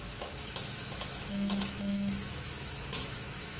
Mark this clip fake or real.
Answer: fake